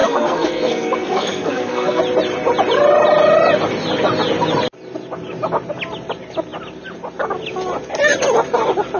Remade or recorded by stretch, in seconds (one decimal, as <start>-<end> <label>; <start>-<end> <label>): 0.0-2.0 remade; 2.0-9.0 recorded